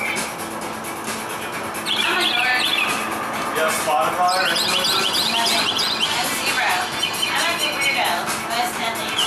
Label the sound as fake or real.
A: real